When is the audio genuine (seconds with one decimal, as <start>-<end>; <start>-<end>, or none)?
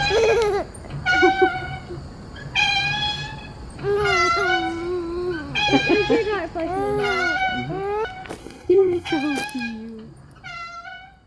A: 0.0-8.4; 9.1-11.3